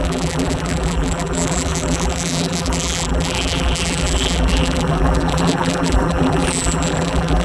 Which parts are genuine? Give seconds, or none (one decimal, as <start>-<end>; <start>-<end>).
none